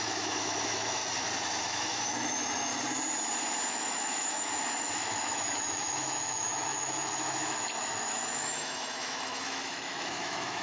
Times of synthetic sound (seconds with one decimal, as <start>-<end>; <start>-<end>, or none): 0.0-1.0; 1.6-2.7; 3.7-10.6